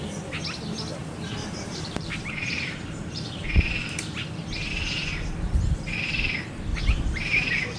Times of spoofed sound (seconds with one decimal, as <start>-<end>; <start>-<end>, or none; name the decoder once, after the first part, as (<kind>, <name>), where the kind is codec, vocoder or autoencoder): 1.0-3.7 (vocoder, BigVGAN v2); 6.7-7.8